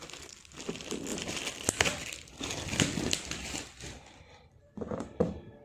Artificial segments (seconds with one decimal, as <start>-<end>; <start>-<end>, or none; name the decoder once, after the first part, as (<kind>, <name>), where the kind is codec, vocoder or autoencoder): none